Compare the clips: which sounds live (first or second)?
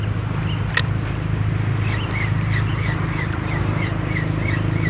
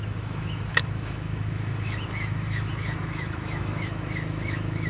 first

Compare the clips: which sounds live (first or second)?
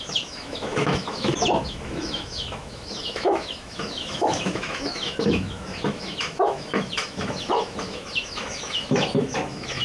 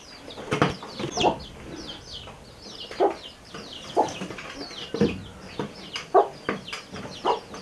second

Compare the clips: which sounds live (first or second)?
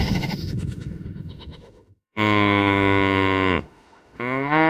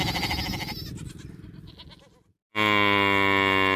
second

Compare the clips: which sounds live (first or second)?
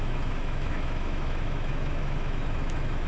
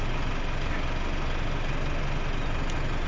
second